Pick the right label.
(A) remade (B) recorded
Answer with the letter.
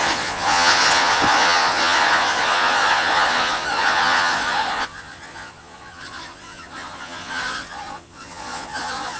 A